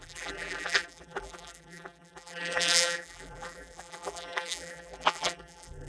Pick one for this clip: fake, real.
fake